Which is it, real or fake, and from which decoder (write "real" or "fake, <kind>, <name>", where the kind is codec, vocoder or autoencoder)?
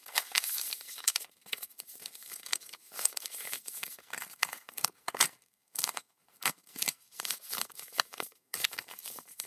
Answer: fake, codec, SNAC